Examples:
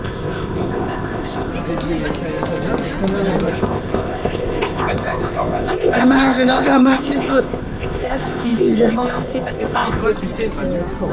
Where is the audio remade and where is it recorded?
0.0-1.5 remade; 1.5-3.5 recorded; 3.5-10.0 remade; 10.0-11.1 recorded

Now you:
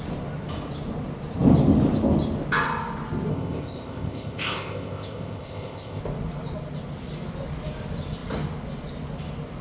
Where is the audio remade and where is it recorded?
0.0-3.3 recorded; 3.3-6.0 remade; 6.0-9.6 recorded

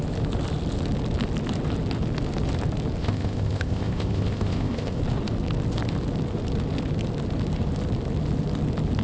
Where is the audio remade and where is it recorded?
0.0-3.0 recorded; 3.0-5.0 remade; 5.0-9.0 recorded